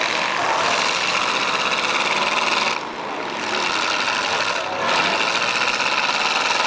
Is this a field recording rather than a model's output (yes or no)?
yes